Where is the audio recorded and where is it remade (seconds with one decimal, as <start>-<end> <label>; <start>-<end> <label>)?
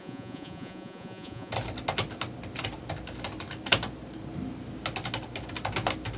0.0-1.5 remade; 1.5-6.2 recorded